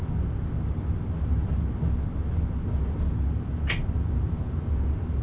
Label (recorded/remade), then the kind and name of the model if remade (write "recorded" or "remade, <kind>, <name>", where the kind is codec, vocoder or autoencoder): recorded